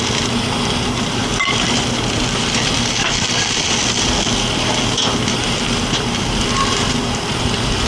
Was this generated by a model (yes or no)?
yes